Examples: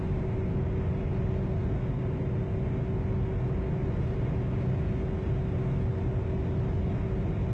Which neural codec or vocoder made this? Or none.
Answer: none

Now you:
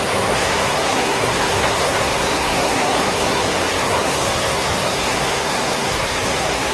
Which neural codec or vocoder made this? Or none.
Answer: codec, SNAC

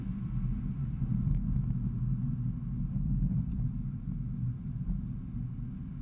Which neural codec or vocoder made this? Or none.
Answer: none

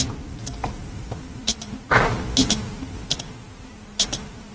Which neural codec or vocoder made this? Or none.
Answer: none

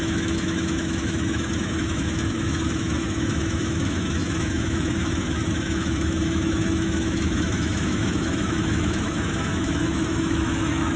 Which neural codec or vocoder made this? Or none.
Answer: autoencoder, DAC-VAE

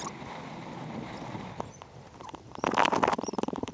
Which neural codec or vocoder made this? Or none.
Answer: none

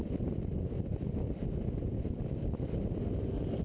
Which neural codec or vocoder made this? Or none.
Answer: none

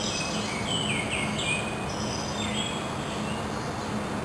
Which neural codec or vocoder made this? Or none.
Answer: none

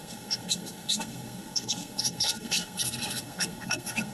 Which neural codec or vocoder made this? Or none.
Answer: codec, SNAC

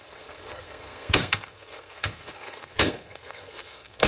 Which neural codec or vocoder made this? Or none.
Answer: codec, SNAC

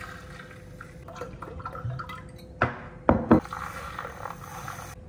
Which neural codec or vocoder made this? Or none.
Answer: none